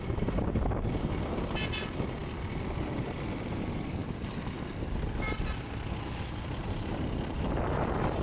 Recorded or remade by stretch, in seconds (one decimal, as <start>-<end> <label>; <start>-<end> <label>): 0.0-8.2 recorded